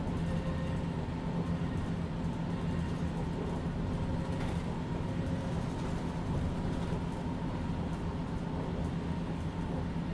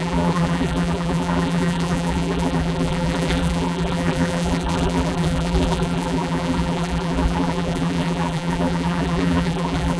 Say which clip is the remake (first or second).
second